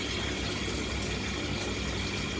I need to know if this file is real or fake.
real